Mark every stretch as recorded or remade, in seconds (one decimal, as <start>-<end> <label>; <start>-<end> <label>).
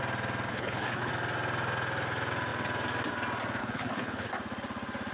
0.0-0.5 recorded; 0.5-1.1 remade; 1.1-3.6 recorded; 3.6-4.3 remade; 4.3-5.1 recorded